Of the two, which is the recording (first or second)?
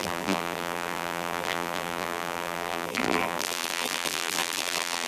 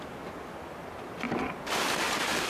second